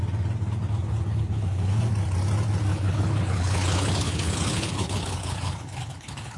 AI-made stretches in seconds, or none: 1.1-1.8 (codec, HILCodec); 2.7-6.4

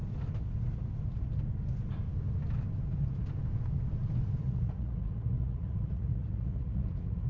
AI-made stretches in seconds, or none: 4.4-7.3 (vocoder, Vocos)

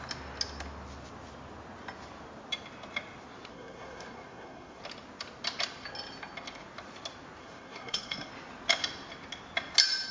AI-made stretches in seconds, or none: 3.5-4.8 (codec, SNAC); 7.4-8.3

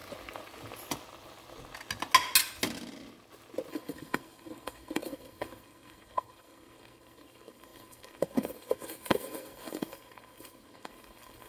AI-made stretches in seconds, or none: 3.7-11.5 (codec, SNAC)

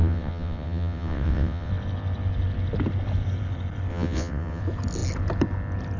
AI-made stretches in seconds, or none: 0.0-1.7 (vocoder, WaveNeXt); 3.9-4.6